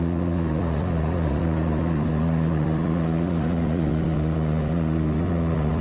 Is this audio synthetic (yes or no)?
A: yes